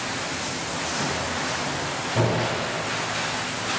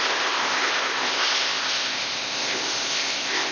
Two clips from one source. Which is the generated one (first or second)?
second